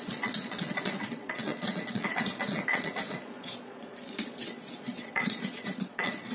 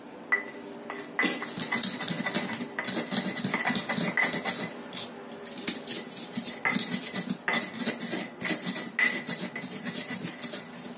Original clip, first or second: second